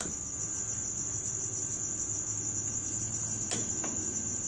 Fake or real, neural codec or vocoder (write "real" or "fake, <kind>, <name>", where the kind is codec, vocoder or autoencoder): real